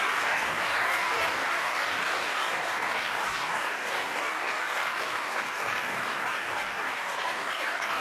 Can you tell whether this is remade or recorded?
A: remade